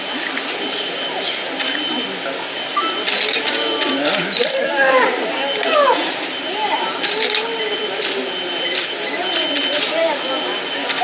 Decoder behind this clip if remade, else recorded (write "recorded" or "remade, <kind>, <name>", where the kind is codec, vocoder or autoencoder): recorded